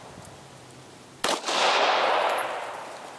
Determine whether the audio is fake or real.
real